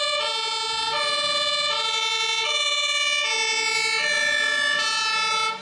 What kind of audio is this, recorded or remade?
recorded